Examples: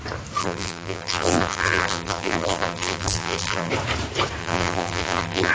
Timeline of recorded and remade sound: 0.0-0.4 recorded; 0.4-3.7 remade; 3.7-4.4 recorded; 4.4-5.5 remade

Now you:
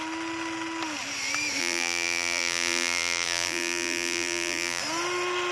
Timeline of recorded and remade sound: 0.0-1.6 recorded; 1.6-4.8 remade; 4.8-5.5 recorded

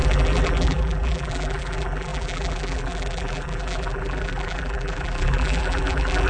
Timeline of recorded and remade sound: 0.0-6.3 remade

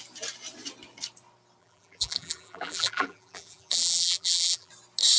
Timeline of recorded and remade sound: 0.0-1.6 recorded; 1.6-4.7 remade; 4.7-5.2 recorded

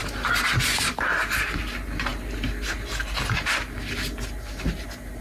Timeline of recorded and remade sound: 0.0-5.2 recorded

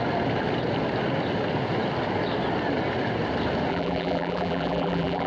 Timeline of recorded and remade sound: 0.0-3.7 recorded; 3.7-5.3 remade

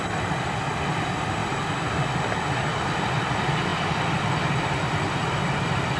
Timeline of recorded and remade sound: 0.0-1.4 remade; 1.4-2.7 recorded; 2.7-6.0 remade